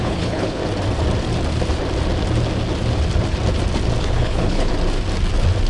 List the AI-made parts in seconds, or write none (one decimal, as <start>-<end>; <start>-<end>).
0.0-0.6; 4.0-4.7